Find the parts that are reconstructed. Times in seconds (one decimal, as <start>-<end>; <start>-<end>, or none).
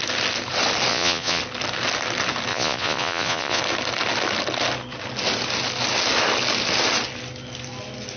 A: 0.9-1.4; 2.5-3.6